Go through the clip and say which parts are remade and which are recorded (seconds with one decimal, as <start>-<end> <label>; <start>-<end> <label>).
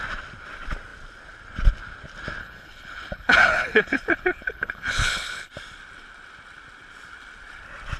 0.0-2.4 recorded; 2.4-5.5 remade; 5.5-8.0 recorded